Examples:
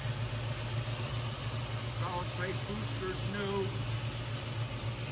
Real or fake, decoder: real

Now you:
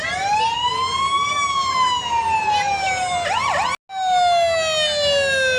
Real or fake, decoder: real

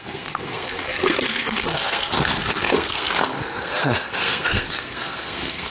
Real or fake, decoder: fake, codec, SNAC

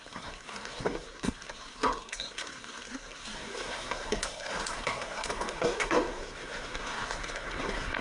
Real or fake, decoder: fake, codec, SNAC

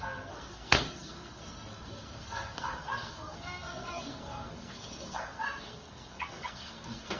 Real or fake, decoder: fake, codec, SNAC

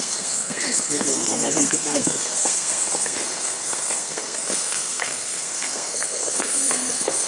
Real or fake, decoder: fake, codec, SNAC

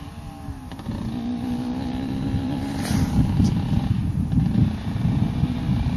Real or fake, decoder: real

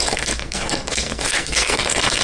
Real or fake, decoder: fake, codec, SNAC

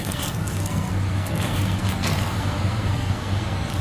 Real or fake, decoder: fake, codec, SNAC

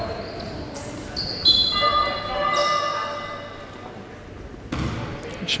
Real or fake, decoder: real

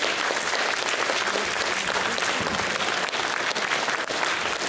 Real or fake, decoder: real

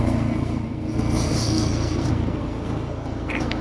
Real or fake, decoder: fake, codec, SNAC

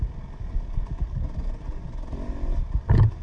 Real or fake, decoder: real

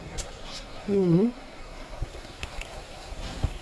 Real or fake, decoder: fake, codec, SNAC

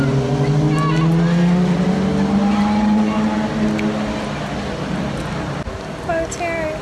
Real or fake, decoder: real